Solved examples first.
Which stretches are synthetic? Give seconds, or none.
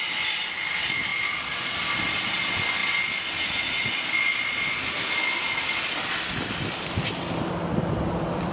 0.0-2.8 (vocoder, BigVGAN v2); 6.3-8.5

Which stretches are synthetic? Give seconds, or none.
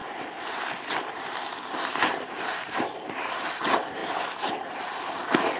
0.0-5.6 (vocoder, BigVGAN v2)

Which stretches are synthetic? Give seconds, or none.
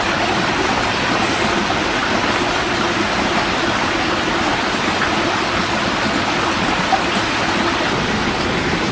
none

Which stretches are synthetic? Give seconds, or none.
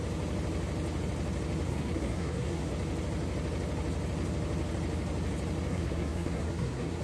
1.7-2.7 (codec, SNAC); 5.7-7.0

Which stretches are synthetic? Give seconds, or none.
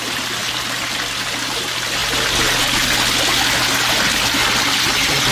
none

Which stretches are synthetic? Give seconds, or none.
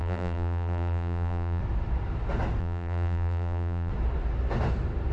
0.0-1.6 (vocoder, BigVGAN v2); 2.6-3.9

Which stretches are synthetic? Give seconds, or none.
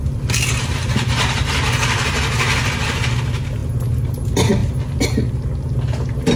none